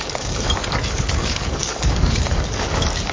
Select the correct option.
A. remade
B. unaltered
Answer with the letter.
A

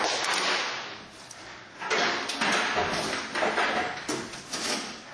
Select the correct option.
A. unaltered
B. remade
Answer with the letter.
A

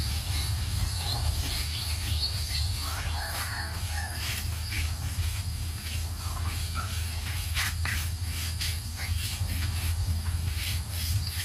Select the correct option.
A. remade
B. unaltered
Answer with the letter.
A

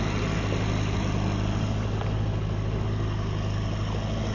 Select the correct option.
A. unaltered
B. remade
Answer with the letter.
A